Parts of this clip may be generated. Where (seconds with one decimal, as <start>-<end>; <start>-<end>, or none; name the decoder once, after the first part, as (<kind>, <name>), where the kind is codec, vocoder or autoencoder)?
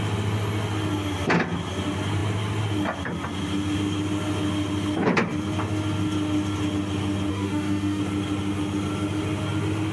7.3-8.0 (autoencoder, DAC-VAE)